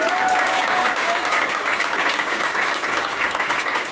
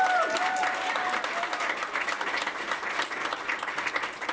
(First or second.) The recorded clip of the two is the second